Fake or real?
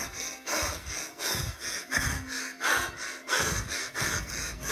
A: fake